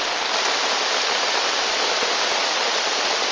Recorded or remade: recorded